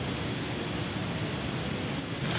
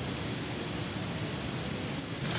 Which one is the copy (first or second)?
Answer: second